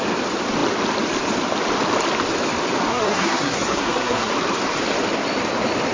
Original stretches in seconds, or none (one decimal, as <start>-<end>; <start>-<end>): 0.0-2.9; 4.3-5.9